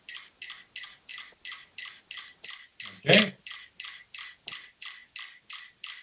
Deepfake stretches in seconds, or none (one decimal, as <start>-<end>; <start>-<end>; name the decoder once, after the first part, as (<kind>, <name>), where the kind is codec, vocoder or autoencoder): none